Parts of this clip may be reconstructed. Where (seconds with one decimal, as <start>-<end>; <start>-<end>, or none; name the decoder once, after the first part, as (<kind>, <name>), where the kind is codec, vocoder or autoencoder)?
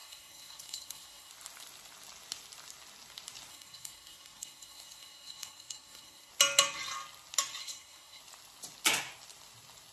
0.0-1.3 (codec, SNAC); 3.5-6.3; 7.6-8.2